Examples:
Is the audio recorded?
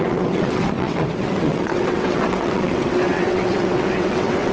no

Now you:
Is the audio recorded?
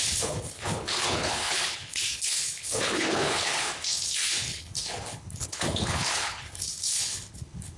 no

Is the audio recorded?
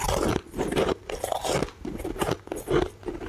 yes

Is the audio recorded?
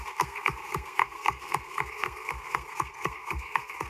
no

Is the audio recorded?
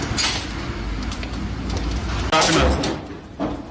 yes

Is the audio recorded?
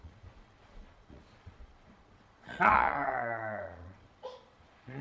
no